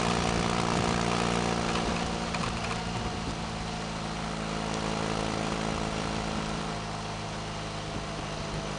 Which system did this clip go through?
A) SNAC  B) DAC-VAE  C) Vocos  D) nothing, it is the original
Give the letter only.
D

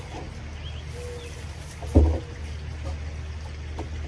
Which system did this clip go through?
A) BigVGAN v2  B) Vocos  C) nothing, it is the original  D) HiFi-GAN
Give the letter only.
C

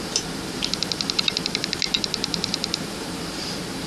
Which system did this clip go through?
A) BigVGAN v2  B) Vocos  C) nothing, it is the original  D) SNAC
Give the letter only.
A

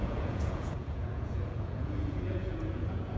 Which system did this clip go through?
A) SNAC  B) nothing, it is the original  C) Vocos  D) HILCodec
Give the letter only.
C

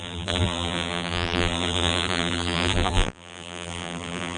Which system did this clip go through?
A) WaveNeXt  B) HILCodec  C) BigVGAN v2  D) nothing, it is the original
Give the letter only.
C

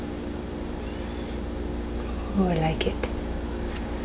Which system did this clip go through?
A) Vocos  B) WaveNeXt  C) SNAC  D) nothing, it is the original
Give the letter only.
D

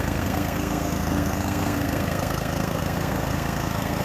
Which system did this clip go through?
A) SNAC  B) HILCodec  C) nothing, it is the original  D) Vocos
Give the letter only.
A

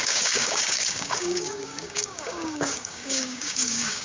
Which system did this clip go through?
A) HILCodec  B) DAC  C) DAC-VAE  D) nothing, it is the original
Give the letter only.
B